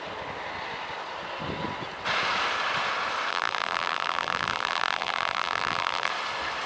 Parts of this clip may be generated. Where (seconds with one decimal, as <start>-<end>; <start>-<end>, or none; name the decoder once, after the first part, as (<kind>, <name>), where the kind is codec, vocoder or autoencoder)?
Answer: 3.3-6.1 (vocoder, BigVGAN v2)